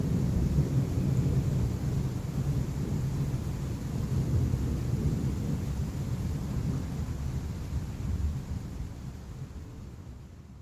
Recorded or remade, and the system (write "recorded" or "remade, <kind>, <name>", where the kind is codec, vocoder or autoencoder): recorded